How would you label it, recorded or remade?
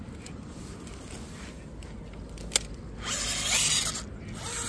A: recorded